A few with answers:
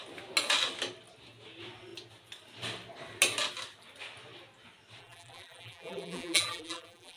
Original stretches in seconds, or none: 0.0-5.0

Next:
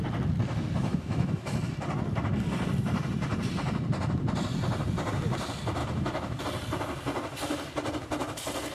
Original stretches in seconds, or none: 0.0-0.8; 1.6-5.8; 6.4-8.7

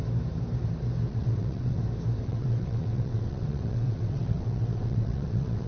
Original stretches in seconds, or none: 0.0-1.1; 1.8-2.2

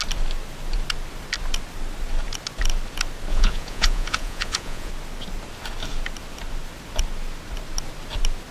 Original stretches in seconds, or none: 0.0-3.3; 4.9-8.5

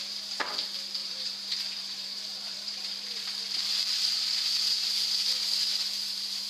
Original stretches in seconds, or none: 0.0-1.0; 4.4-6.5

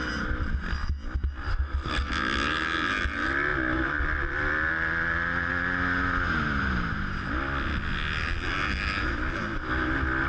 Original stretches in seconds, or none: 0.0-1.5; 2.1-10.3

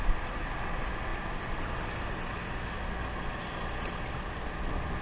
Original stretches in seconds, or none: 0.0-5.0